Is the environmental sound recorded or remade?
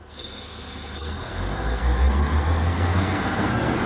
remade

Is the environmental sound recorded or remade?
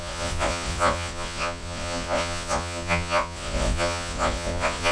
remade